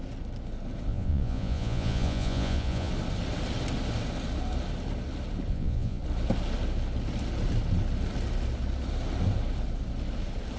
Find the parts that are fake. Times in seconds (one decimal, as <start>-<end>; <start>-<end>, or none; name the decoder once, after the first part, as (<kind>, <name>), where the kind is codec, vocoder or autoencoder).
0.9-2.9 (vocoder, Vocos); 5.5-6.0